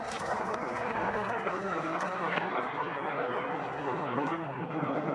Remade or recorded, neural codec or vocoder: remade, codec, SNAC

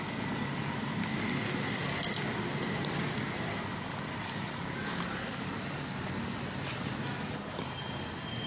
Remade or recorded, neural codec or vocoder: recorded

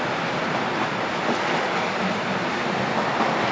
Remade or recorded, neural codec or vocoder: recorded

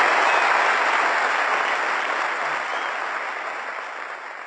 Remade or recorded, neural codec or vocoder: recorded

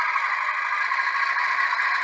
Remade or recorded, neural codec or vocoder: recorded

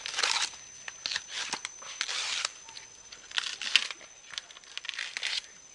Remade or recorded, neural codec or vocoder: recorded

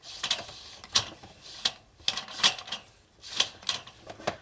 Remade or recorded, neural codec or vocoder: recorded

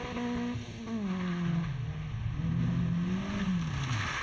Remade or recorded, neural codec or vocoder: recorded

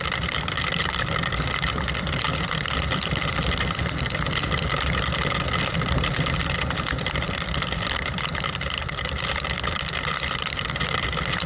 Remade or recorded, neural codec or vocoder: remade, vocoder, BigVGAN v2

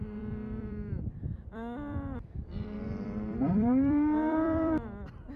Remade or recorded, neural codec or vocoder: remade, vocoder, BigVGAN v2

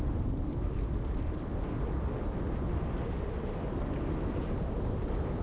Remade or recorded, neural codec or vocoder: recorded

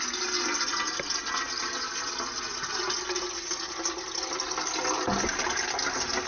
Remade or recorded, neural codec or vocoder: recorded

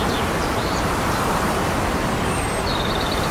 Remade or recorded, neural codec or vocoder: remade, vocoder, BigVGAN v2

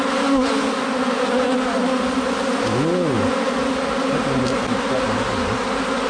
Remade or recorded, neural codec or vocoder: recorded